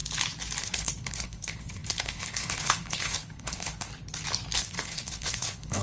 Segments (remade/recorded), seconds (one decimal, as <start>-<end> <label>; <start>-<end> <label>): 0.0-0.6 recorded; 0.6-3.9 remade; 3.9-4.6 recorded; 4.6-5.8 remade

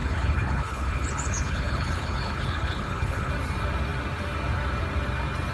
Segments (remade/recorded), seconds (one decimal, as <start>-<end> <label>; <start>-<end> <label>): 0.0-3.3 remade; 3.3-5.5 recorded